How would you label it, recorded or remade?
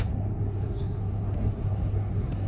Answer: remade